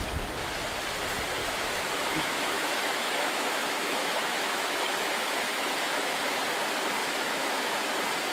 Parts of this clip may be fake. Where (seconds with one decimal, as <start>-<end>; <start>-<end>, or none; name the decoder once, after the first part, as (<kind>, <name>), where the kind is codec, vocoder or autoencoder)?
1.4-6.4 (autoencoder, DAC-VAE); 7.0-7.7